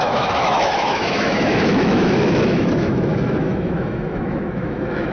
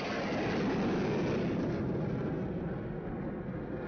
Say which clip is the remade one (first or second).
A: first